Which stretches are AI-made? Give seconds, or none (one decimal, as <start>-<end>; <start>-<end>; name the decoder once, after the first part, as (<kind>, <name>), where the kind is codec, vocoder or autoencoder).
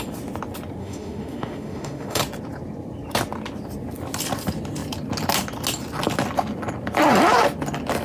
0.8-2.2 (autoencoder, DAC-VAE)